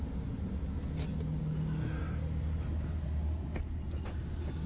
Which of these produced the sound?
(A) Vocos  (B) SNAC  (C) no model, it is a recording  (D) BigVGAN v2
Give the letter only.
C